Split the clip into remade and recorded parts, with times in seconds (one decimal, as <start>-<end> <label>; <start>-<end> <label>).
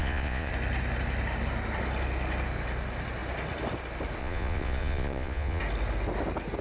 0.0-0.5 remade; 0.5-4.2 recorded; 4.2-5.6 remade; 5.6-6.6 recorded